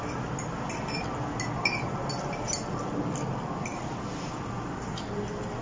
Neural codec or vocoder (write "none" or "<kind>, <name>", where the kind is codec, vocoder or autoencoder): none